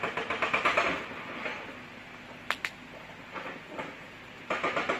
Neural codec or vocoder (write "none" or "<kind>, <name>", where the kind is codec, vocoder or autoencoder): none